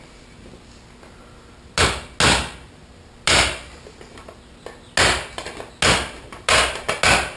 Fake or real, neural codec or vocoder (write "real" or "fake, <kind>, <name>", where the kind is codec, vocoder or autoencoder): real